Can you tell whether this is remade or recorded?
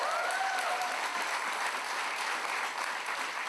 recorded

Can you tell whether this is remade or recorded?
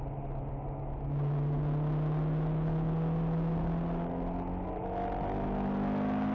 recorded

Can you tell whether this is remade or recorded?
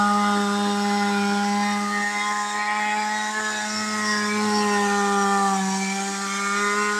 recorded